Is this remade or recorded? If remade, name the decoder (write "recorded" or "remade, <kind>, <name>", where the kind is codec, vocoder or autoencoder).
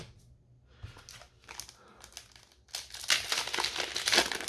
recorded